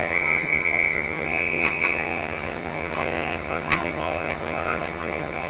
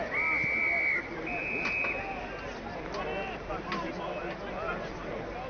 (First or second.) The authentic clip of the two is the second